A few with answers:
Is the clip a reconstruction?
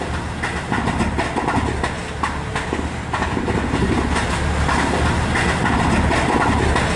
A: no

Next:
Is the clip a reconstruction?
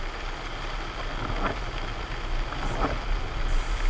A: no